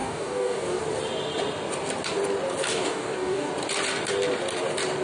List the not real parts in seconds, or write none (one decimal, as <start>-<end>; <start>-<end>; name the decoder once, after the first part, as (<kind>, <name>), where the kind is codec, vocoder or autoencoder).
0.0-0.8 (codec, DAC); 2.7-3.5